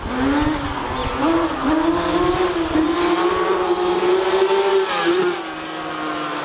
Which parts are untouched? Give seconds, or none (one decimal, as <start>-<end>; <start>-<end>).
0.0-6.4